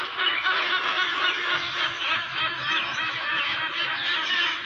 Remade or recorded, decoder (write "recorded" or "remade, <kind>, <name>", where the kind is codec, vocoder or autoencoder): remade, autoencoder, DAC-VAE